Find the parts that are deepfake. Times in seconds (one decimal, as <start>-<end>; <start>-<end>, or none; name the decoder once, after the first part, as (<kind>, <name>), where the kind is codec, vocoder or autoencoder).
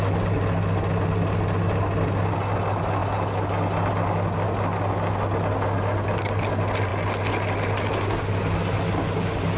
none